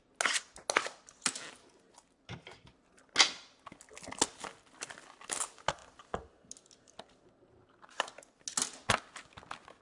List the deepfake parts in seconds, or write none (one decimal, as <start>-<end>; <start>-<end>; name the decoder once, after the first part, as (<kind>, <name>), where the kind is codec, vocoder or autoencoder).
none